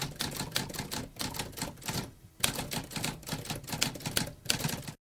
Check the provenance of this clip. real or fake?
real